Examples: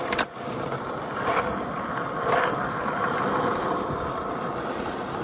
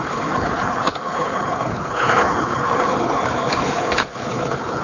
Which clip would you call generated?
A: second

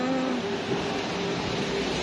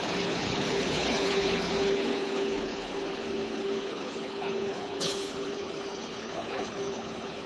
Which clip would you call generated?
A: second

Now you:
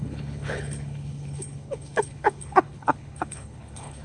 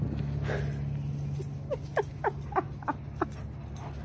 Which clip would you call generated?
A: first